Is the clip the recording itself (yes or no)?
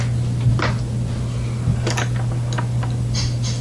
yes